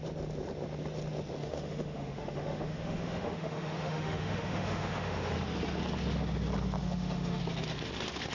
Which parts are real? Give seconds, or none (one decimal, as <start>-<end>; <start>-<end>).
0.0-1.4; 5.3-6.8; 7.4-8.3